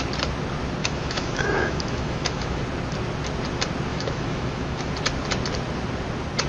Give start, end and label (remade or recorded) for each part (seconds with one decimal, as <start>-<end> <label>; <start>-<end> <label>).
0.0-0.8 recorded; 0.8-2.6 remade; 2.6-3.9 recorded; 3.9-4.9 remade; 4.9-6.5 recorded